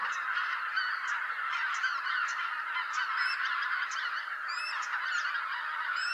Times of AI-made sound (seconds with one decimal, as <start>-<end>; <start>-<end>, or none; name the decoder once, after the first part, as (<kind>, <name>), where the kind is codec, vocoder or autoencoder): none

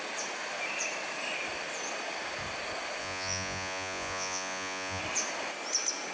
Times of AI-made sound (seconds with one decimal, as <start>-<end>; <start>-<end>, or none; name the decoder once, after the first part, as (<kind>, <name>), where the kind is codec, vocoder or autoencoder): 3.0-5.0 (vocoder, Vocos)

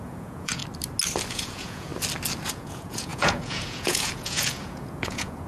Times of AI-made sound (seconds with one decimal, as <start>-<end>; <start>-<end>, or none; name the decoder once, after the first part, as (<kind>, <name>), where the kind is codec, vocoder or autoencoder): 0.0-0.6 (vocoder, Vocos); 1.3-1.9; 2.5-5.5

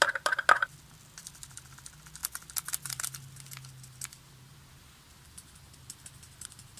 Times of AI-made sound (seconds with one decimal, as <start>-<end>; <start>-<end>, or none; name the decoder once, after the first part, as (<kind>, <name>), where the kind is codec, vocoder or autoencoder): none